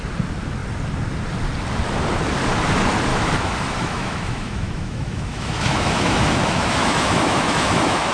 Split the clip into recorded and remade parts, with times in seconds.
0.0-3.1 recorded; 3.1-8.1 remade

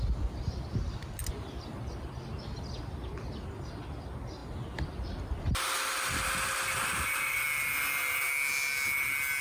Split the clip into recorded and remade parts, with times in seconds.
0.0-9.4 recorded

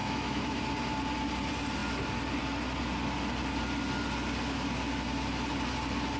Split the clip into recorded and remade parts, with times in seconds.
0.0-0.6 remade; 0.6-6.2 recorded

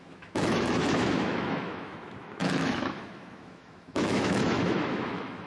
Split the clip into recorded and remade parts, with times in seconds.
0.0-5.5 remade

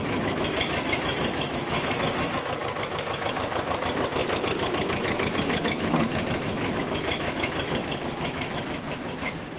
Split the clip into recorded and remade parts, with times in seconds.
0.0-9.6 remade

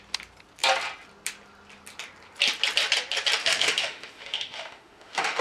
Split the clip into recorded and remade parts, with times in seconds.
0.0-3.4 recorded; 3.4-5.4 remade

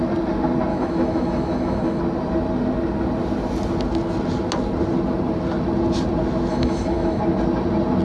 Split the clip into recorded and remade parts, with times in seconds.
0.0-0.7 recorded; 0.7-2.0 remade; 2.0-6.5 recorded; 6.5-7.2 remade; 7.2-8.0 recorded

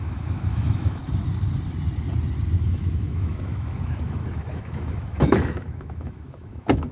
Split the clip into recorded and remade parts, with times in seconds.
0.0-1.0 remade; 1.0-2.6 recorded; 2.6-6.9 remade